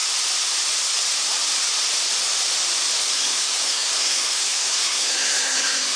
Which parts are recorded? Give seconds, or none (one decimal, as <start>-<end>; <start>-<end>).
0.0-3.0